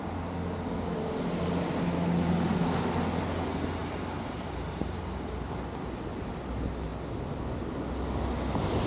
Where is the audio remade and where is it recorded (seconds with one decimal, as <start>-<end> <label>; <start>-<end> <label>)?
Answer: 0.0-8.9 recorded